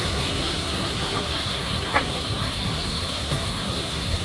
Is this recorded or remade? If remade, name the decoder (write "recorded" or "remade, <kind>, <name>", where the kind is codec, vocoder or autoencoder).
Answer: remade, codec, SNAC